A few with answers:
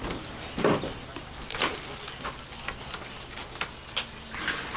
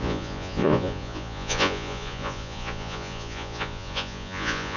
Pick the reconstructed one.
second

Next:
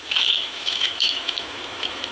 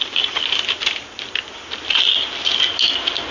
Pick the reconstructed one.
first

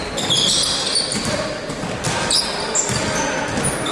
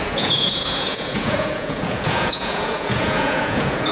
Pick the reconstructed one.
second